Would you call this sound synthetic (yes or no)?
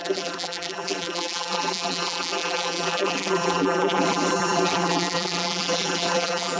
yes